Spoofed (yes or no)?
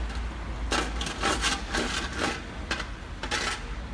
no